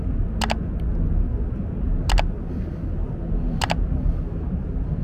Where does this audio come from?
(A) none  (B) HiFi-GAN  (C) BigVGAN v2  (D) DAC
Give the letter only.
A